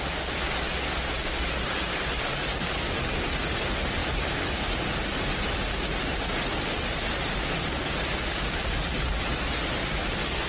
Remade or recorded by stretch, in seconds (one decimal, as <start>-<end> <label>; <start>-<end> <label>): 0.0-2.3 recorded; 2.3-2.9 remade; 2.9-10.5 recorded